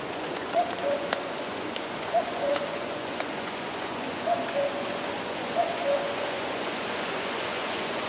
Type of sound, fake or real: fake